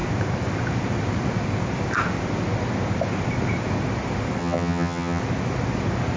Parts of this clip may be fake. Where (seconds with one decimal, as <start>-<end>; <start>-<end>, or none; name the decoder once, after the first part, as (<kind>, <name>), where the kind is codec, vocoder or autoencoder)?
4.4-5.2 (vocoder, HiFi-GAN)